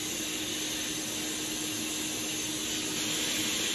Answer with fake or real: real